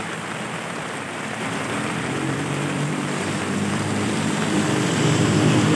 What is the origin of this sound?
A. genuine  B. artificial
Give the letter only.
B